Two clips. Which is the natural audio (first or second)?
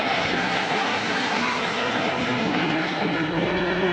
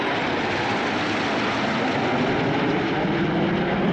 second